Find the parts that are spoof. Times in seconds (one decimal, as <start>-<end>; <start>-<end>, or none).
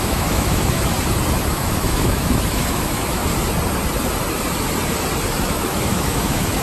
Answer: 0.0-0.9; 1.4-3.2; 5.4-6.6